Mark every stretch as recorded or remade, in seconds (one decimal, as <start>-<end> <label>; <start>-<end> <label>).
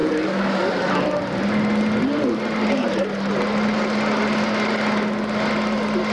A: 0.0-0.9 remade; 0.9-6.1 recorded